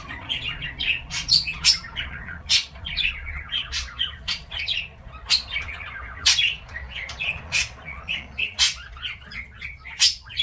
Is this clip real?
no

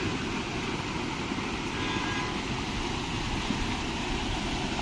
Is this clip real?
yes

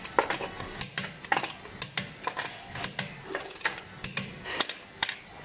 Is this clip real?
yes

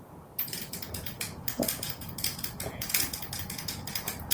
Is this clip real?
no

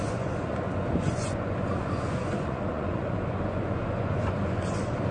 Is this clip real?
no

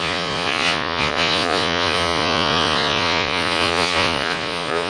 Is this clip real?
no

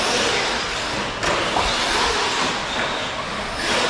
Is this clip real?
yes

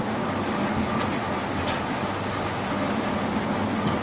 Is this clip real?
yes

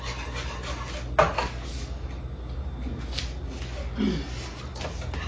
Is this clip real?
yes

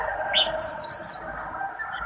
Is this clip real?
yes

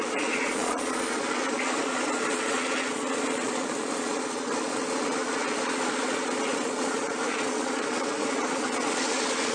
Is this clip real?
no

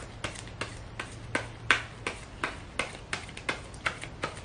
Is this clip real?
yes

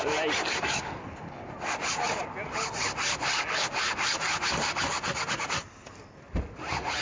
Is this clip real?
yes